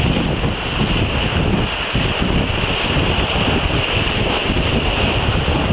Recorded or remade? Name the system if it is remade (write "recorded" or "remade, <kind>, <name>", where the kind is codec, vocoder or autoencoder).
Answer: recorded